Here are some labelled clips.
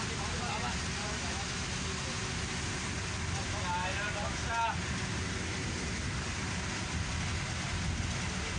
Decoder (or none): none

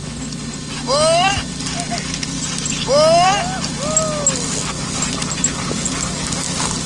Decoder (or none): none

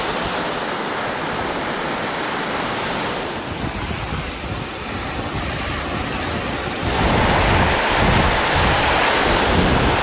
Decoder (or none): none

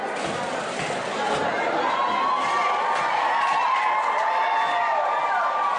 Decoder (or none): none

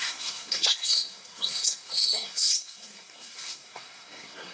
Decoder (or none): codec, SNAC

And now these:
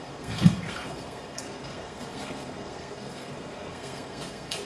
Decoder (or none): codec, SNAC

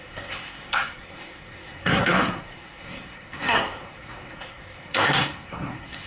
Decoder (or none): codec, SNAC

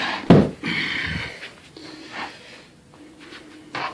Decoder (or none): none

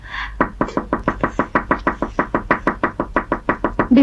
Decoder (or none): none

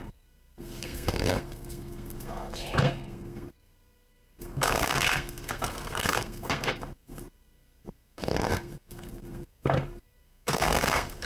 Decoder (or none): codec, SNAC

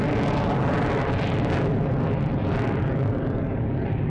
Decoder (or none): none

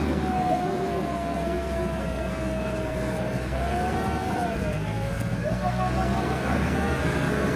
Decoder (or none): codec, SNAC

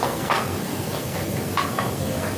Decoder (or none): codec, SNAC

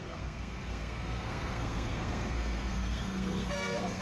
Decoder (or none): codec, SNAC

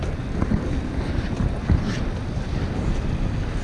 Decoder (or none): none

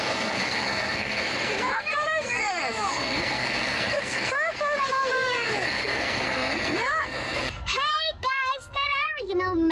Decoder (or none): codec, SNAC